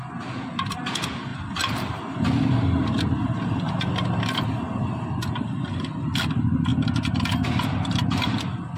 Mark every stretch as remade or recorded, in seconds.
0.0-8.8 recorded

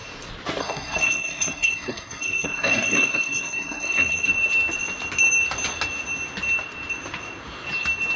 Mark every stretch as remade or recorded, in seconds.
0.0-0.6 recorded; 0.6-4.3 remade; 4.3-8.2 recorded

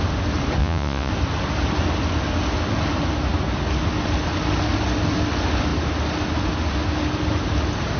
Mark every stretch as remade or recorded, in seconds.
0.0-0.6 recorded; 0.6-1.1 remade; 1.1-8.0 recorded

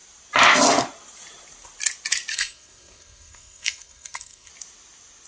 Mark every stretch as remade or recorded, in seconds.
0.0-2.3 recorded; 2.3-4.5 remade; 4.5-5.3 recorded

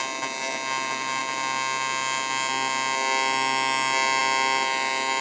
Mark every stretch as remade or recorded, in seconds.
0.0-5.2 recorded